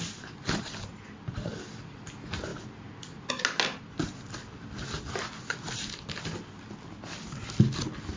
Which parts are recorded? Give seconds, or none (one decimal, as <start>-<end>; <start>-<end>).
0.0-8.2